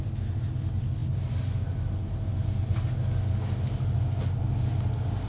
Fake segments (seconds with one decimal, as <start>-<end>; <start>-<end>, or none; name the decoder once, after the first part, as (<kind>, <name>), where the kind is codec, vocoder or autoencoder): none